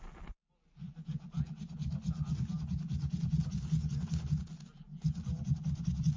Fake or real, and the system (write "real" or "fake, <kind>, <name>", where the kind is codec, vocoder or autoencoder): real